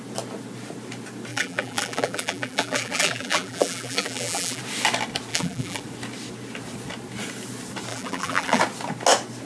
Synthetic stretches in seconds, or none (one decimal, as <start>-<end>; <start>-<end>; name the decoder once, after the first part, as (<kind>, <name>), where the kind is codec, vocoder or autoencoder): 1.3-4.6 (vocoder, BigVGAN v2); 5.3-5.8; 7.9-8.6